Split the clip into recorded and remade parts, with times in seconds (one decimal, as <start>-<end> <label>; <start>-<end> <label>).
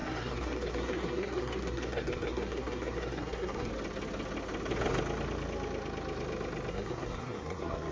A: 0.0-3.7 remade; 3.7-6.7 recorded; 6.7-7.9 remade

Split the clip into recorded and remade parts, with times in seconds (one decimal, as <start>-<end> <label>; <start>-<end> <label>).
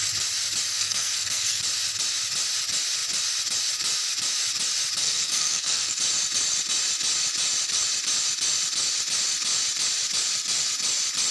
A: 0.0-0.7 recorded; 0.7-1.6 remade; 1.6-5.0 recorded; 5.0-6.0 remade; 6.0-11.3 recorded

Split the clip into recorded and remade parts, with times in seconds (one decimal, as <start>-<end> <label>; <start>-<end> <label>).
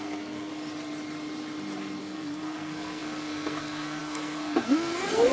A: 0.0-0.5 remade; 0.5-2.0 recorded; 2.0-5.3 remade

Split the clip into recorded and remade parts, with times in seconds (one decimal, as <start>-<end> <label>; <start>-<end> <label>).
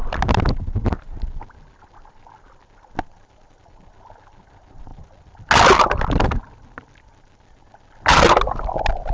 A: 0.0-9.1 recorded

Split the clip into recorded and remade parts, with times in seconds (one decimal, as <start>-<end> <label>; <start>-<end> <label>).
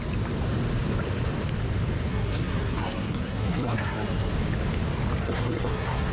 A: 0.0-2.1 recorded; 2.1-4.3 remade; 4.3-5.2 recorded; 5.2-6.1 remade